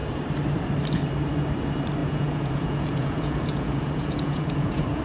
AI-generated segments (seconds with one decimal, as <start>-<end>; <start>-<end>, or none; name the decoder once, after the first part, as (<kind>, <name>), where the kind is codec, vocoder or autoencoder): 2.0-5.0 (vocoder, Vocos)

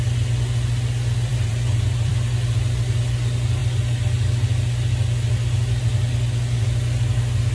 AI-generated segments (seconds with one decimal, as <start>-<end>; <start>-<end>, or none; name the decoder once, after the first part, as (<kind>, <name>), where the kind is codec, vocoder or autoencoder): 1.3-2.1 (vocoder, BigVGAN v2)